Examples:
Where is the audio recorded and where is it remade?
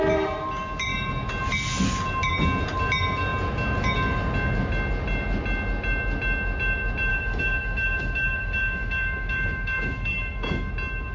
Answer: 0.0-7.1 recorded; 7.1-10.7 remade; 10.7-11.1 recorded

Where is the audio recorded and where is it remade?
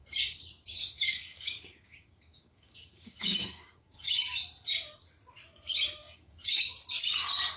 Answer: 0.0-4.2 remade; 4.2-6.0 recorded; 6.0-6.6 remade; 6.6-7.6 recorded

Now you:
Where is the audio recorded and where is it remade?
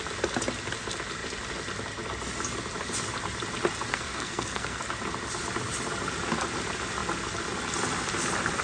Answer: 0.0-3.9 recorded; 3.9-4.8 remade; 4.8-8.6 recorded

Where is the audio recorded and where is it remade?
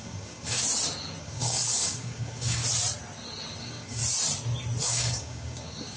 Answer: 0.0-0.6 remade; 0.6-1.2 recorded; 1.2-2.6 remade; 2.6-3.6 recorded; 3.6-4.0 remade; 4.0-4.8 recorded; 4.8-6.0 remade